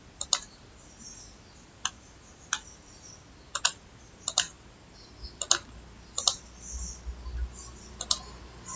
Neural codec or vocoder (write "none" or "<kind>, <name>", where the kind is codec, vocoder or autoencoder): none